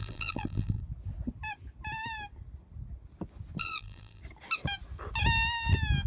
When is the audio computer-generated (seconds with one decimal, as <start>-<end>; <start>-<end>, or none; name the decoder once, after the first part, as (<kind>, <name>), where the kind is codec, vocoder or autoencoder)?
0.0-0.8 (vocoder, BigVGAN v2); 3.6-4.2